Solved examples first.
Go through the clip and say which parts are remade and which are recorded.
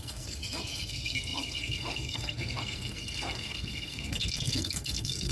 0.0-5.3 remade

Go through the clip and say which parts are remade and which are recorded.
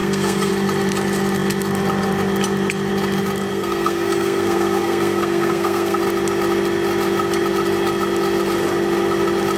0.0-0.5 remade; 0.5-3.5 recorded; 3.5-6.0 remade; 6.0-9.6 recorded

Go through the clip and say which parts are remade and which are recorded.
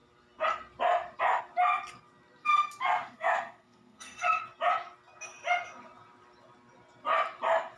0.0-2.4 recorded; 2.4-4.4 remade; 4.4-7.8 recorded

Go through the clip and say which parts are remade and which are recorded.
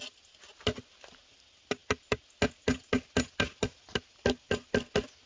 0.0-5.3 recorded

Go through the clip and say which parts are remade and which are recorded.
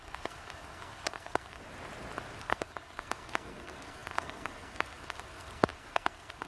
0.0-1.6 remade; 1.6-2.4 recorded; 2.4-6.5 remade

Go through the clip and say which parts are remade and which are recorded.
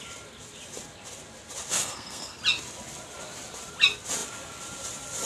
0.0-1.7 recorded; 1.7-2.4 remade; 2.4-5.3 recorded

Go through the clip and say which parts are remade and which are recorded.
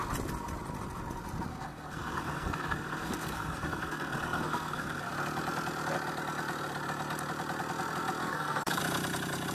0.0-1.5 recorded; 1.5-5.1 remade; 5.1-8.2 recorded; 8.2-8.8 remade; 8.8-9.5 recorded